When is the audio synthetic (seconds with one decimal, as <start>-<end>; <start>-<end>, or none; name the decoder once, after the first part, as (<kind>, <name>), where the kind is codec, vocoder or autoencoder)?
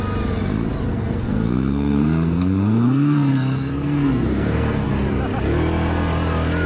0.9-4.9 (codec, SNAC)